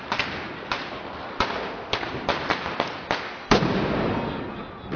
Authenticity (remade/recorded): recorded